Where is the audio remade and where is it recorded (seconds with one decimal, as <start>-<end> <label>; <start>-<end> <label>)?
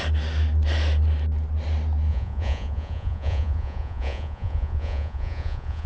0.0-2.1 recorded; 2.1-5.9 remade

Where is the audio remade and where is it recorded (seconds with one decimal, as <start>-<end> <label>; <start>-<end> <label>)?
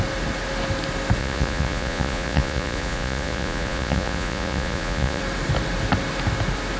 0.0-1.2 recorded; 1.2-5.2 remade; 5.2-6.8 recorded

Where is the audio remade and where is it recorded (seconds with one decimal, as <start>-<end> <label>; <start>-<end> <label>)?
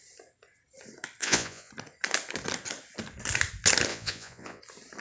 0.0-1.2 recorded; 1.2-1.7 remade; 1.7-3.9 recorded; 3.9-4.6 remade; 4.6-5.0 recorded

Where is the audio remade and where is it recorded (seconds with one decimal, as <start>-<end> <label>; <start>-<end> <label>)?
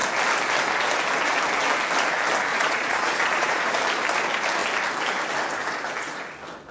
0.0-2.5 recorded; 2.5-3.6 remade; 3.6-6.7 recorded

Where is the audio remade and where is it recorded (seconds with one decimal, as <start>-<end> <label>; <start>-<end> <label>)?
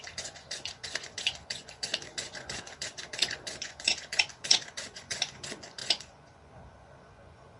0.0-7.6 remade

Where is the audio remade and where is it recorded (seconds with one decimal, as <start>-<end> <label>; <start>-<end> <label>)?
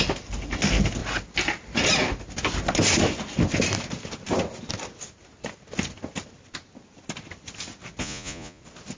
0.0-8.0 recorded; 8.0-8.6 remade; 8.6-9.0 recorded